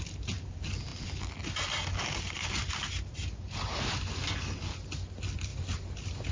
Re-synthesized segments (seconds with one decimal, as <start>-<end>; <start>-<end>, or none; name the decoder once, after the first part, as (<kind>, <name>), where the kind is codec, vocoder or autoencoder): none